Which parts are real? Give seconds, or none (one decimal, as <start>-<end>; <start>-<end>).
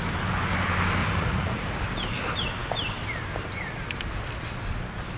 0.0-1.0; 1.8-5.2